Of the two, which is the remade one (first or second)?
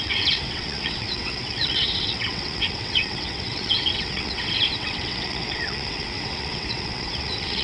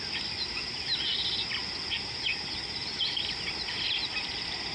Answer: first